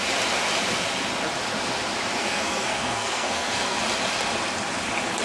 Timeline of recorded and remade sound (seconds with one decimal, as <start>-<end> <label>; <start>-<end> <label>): 0.0-2.2 recorded; 2.2-3.8 remade; 3.8-5.2 recorded